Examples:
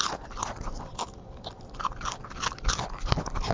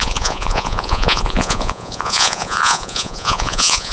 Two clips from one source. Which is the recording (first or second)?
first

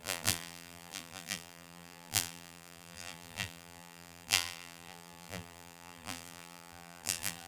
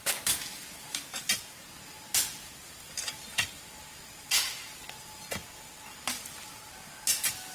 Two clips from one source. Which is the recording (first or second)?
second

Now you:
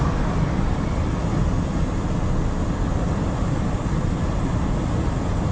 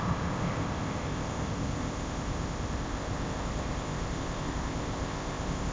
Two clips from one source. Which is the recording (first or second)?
first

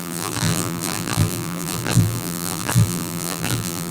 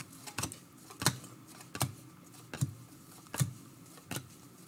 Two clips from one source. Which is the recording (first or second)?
second